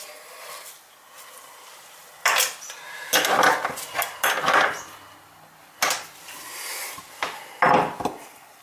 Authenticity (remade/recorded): recorded